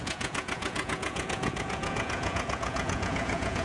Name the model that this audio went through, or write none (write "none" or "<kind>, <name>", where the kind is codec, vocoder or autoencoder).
vocoder, Vocos